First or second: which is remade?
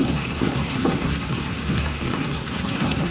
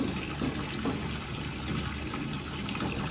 first